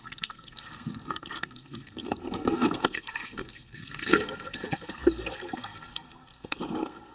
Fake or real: fake